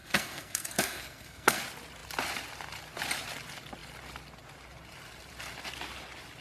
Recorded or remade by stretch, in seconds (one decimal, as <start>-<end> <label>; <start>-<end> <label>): 0.0-1.6 remade; 1.6-6.4 recorded